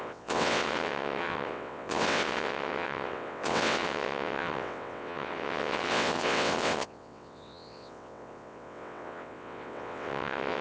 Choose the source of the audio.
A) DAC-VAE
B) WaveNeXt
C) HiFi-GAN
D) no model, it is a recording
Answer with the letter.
B